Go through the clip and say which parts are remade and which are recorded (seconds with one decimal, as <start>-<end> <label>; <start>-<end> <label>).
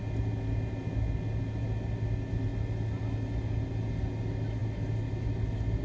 0.0-5.8 recorded